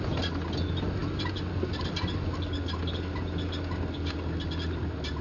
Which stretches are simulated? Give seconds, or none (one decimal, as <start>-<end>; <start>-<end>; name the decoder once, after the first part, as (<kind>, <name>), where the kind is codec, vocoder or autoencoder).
none